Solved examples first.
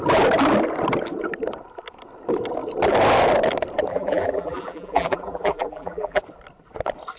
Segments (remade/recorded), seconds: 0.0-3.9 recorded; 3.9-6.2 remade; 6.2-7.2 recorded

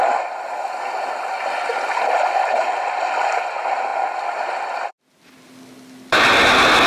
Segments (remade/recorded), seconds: 0.0-1.7 recorded; 1.7-3.1 remade; 3.1-6.9 recorded

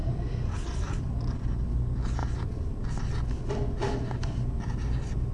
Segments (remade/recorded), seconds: 0.0-1.1 remade; 1.1-2.2 recorded; 2.2-3.8 remade; 3.8-5.3 recorded